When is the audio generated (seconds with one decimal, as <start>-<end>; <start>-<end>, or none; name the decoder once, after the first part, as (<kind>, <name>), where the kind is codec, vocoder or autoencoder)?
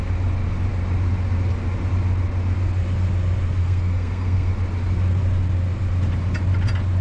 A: 3.6-4.5 (codec, SNAC)